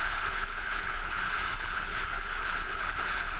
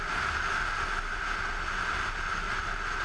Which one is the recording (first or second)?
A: second